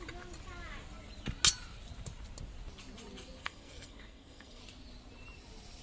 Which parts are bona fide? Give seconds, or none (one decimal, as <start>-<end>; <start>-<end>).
0.0-3.4; 4.6-5.8